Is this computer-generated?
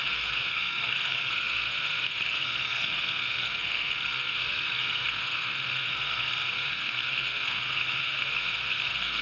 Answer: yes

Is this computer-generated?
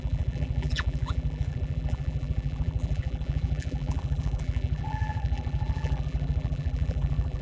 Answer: yes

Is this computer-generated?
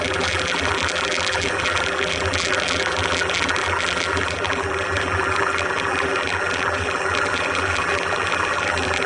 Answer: yes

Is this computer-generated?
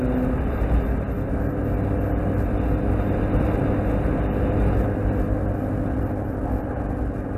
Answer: no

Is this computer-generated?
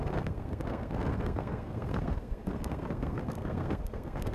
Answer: yes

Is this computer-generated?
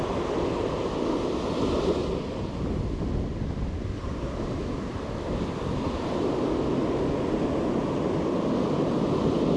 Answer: no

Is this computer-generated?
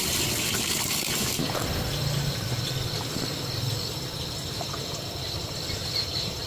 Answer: no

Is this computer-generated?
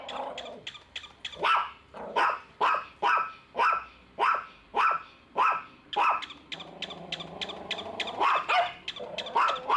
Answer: no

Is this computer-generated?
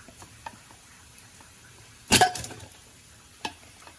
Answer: yes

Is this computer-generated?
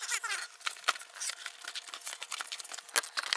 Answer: no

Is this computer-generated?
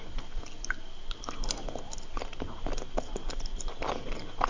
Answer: no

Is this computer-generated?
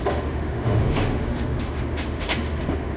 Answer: yes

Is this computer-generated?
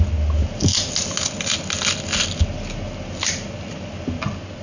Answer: no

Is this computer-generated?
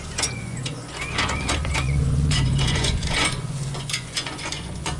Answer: yes